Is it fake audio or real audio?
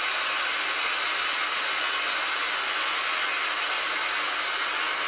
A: real